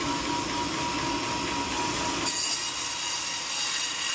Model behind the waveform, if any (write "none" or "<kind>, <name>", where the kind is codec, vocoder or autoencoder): none